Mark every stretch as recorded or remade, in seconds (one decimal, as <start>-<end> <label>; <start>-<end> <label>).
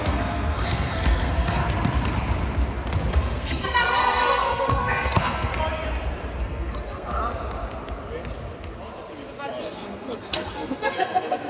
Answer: 0.0-1.6 remade; 1.6-3.1 recorded; 3.1-5.5 remade; 5.5-6.4 recorded; 6.4-7.2 remade; 7.2-9.6 recorded; 9.6-11.5 remade